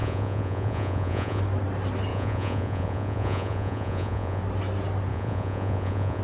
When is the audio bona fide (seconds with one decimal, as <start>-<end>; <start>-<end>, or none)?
1.4-2.1; 4.4-5.1